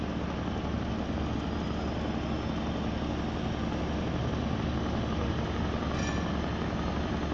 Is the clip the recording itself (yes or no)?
yes